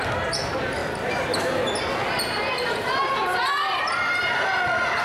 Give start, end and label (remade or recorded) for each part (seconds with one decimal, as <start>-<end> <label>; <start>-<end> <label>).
0.0-5.0 recorded